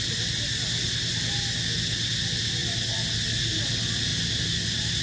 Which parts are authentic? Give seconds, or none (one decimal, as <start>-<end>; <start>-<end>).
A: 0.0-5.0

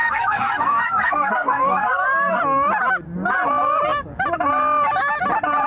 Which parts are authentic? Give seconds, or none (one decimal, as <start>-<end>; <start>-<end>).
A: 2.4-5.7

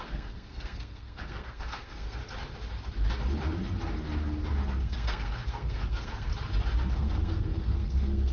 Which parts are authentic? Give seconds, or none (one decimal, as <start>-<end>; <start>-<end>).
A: 2.2-4.8; 6.3-6.9